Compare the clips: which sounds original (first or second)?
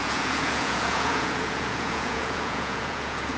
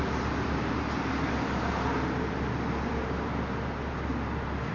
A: second